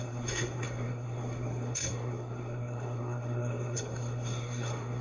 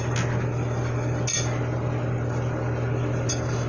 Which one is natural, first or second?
second